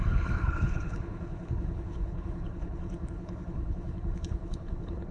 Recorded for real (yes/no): no